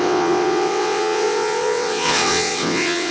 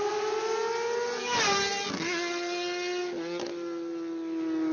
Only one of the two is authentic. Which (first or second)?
second